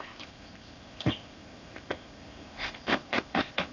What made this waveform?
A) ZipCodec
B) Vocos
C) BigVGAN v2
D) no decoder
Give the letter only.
A